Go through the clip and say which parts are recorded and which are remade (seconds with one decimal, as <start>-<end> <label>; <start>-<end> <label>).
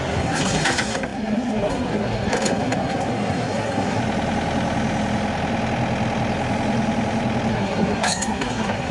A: 0.0-4.0 remade; 4.0-7.5 recorded; 7.5-8.9 remade